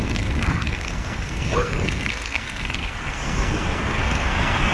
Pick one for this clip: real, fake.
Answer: fake